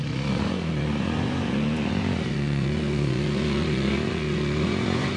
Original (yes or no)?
no